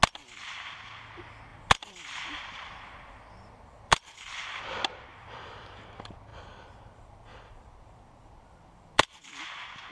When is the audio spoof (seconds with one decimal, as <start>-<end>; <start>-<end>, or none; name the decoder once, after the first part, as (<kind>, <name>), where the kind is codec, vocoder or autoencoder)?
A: 1.5-4.6 (vocoder, BigVGAN v2); 5.1-5.7; 6.3-9.4